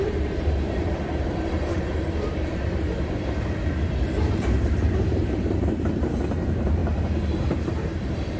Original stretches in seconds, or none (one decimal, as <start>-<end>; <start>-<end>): none